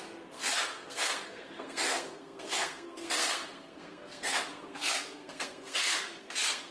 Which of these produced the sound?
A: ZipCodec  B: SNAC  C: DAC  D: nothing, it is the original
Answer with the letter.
B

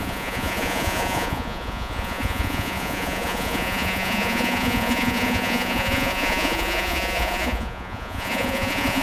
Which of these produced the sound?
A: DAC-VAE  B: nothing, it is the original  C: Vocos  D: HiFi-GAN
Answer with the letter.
C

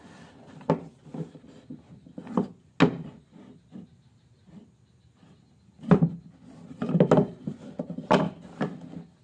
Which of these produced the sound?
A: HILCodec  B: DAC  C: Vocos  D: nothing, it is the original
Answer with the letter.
D